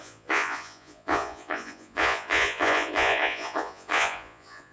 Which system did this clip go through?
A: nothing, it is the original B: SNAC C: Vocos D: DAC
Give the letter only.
C